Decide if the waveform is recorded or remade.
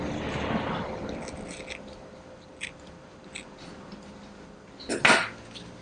recorded